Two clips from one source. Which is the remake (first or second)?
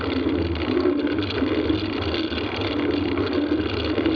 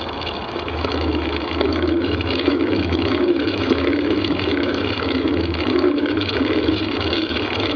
second